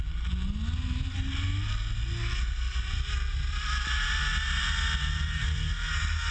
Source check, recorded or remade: recorded